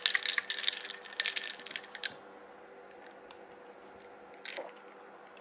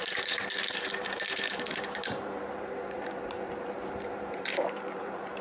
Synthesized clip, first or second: second